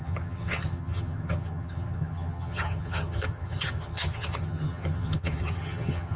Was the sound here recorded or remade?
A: remade